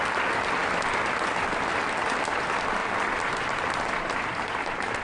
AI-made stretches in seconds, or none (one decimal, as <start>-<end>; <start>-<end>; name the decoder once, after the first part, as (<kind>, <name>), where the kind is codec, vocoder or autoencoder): none